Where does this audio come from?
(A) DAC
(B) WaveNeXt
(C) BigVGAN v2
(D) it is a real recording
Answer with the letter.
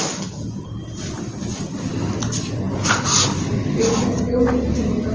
D